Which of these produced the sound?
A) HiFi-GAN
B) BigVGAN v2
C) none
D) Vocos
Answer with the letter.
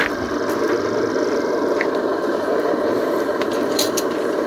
B